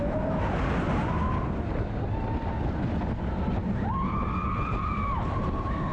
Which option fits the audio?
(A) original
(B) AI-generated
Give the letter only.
A